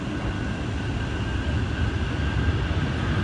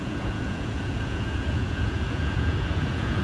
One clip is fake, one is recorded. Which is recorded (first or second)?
first